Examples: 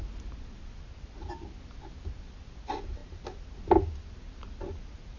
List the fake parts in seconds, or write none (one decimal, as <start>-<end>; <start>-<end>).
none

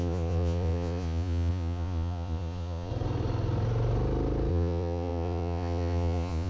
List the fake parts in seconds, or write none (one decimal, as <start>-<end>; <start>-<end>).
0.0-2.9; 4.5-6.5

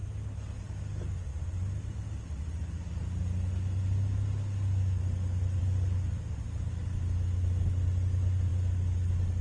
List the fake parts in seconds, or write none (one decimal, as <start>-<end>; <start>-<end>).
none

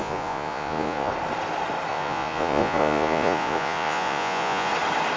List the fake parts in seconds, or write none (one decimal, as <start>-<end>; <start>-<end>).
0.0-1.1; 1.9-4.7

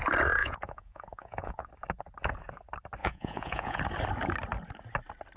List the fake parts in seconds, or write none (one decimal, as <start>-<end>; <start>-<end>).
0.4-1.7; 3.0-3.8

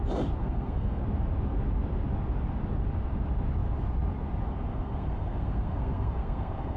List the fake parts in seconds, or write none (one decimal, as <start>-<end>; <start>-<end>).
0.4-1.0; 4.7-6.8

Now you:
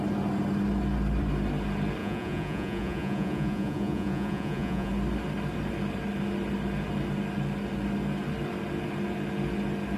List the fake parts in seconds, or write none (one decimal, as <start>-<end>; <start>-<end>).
2.0-4.9